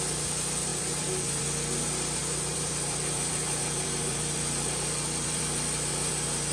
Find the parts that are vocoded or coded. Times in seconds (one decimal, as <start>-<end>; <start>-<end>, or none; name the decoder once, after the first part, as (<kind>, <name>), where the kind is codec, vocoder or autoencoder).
0.7-1.4 (vocoder, BigVGAN v2); 2.2-6.1